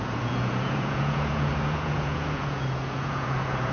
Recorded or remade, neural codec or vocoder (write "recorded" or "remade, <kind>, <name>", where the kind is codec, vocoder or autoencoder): remade, vocoder, Vocos